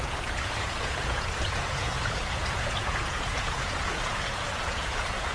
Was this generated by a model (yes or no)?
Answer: yes